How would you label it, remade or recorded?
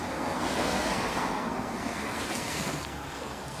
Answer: remade